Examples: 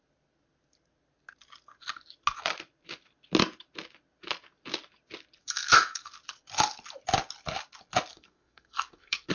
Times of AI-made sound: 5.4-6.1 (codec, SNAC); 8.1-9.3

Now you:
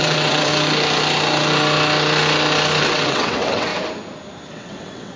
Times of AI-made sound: 0.0-0.5 (vocoder, WaveNeXt); 2.8-3.7; 4.5-5.2

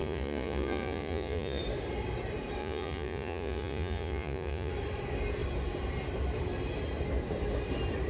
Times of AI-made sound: 0.0-1.6 (vocoder, Vocos); 2.6-4.7

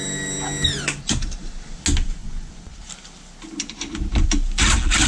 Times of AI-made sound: 2.2-2.8 (vocoder, Vocos)

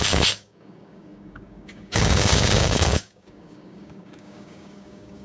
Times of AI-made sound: 0.0-5.2 (codec, DAC)

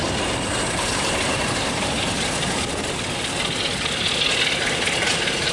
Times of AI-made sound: none